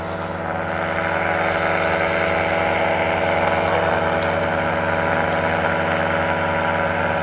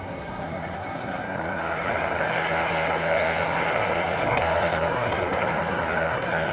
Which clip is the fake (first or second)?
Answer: second